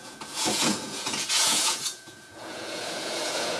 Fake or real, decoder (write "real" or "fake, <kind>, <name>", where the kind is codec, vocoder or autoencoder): fake, vocoder, Vocos